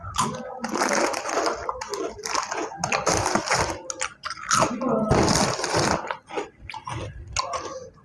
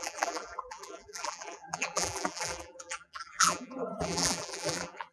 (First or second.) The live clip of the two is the first